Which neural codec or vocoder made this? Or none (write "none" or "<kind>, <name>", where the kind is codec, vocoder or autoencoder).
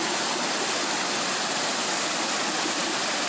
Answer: none